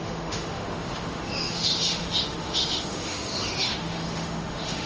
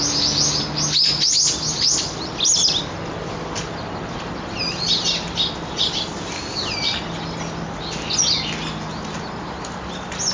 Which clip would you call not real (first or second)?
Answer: first